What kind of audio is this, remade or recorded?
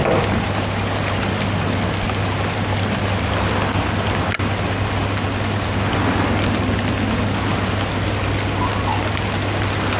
recorded